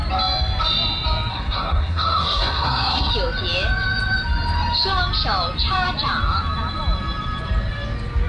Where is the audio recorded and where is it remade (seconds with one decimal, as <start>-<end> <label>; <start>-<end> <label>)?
0.0-1.3 recorded; 1.3-3.1 remade; 3.1-8.3 recorded